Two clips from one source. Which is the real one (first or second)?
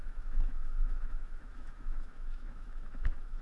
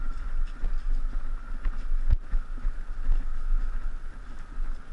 second